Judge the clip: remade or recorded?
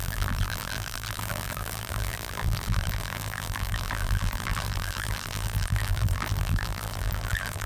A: remade